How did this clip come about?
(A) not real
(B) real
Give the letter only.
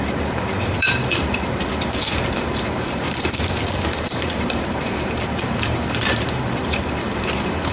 A